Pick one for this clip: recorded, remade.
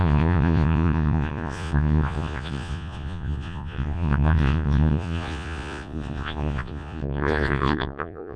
remade